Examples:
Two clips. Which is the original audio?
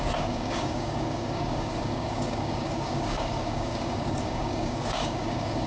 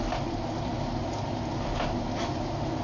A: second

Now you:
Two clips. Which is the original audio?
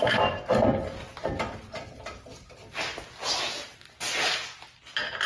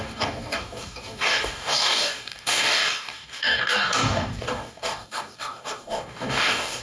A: first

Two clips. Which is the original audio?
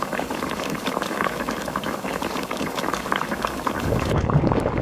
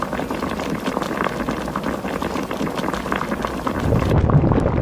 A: second